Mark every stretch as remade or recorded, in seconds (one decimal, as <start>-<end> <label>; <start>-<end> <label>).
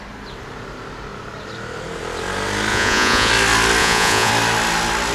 0.0-2.7 recorded; 2.7-3.3 remade; 3.3-3.8 recorded; 3.8-4.3 remade; 4.3-5.1 recorded